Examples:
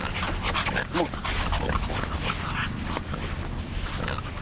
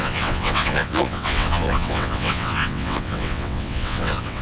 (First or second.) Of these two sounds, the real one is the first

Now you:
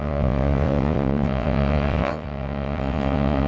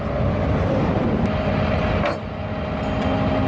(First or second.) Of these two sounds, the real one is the second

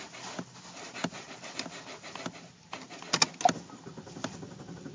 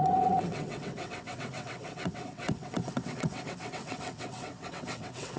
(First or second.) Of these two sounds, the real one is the first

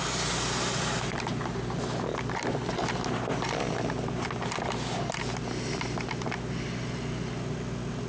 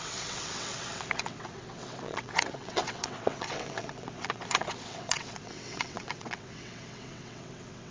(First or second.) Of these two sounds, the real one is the first